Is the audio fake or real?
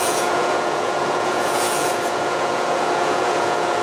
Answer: fake